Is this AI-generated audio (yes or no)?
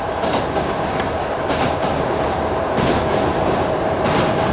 yes